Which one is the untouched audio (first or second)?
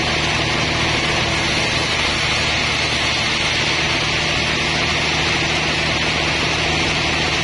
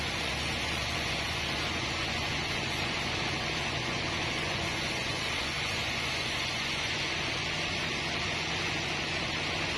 first